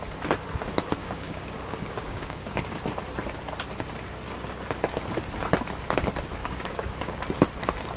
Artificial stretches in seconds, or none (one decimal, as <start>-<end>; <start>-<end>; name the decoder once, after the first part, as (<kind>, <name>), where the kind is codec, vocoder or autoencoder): 1.0-2.8 (codec, DAC); 6.4-7.2